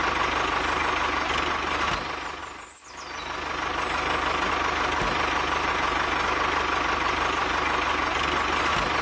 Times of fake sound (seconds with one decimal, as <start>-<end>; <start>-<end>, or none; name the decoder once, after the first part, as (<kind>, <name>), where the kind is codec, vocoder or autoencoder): none